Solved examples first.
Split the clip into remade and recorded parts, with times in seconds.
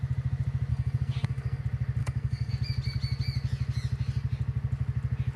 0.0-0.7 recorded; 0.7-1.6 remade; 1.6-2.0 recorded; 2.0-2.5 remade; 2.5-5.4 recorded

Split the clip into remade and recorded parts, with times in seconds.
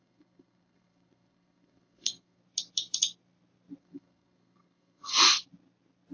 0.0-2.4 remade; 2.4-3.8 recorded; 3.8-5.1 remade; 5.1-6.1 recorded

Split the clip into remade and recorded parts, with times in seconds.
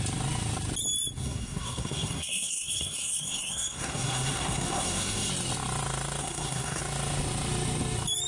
0.0-1.2 recorded; 1.2-5.3 remade; 5.3-6.2 recorded; 6.2-6.8 remade; 6.8-8.3 recorded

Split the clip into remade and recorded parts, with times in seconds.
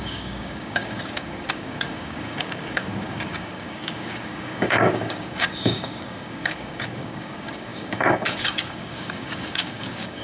0.0-10.2 remade